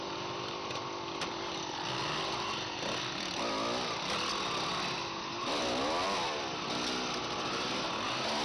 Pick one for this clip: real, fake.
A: real